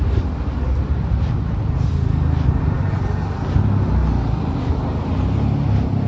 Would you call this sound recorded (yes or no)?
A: yes